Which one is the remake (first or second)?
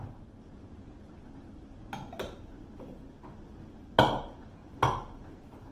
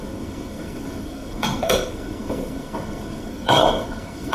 second